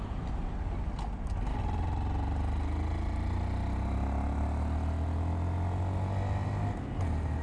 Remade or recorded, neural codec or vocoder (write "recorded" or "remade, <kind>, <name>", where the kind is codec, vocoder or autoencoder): recorded